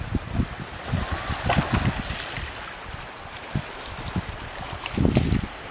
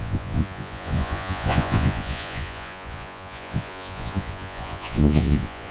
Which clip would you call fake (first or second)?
second